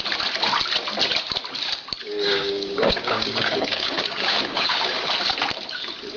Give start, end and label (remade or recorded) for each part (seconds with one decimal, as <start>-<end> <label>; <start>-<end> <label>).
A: 0.0-2.0 recorded; 2.0-5.1 remade; 5.1-6.2 recorded